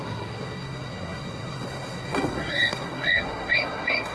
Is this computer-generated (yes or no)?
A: yes